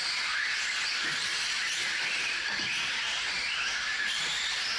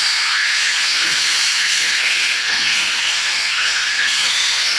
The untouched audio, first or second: first